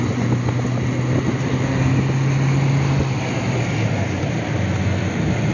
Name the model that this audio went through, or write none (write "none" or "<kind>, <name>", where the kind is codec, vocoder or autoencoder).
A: none